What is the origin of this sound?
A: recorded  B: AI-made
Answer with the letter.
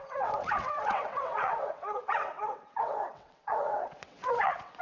B